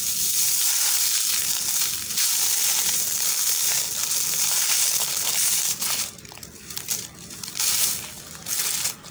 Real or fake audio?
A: real